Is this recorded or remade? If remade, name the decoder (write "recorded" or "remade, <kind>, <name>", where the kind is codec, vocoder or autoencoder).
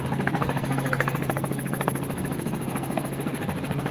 remade, codec, SNAC